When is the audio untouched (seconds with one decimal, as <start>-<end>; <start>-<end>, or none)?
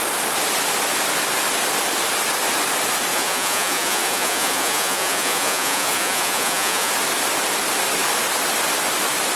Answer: 0.0-3.1; 6.9-9.4